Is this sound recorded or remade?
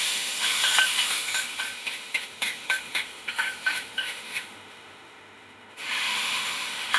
remade